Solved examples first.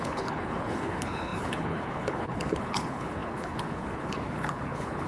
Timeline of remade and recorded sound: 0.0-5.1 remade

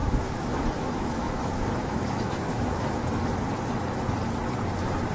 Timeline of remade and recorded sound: 0.0-3.1 remade; 3.1-5.1 recorded

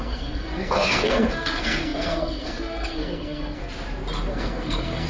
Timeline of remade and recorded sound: 0.0-3.6 remade; 3.6-4.3 recorded; 4.3-5.1 remade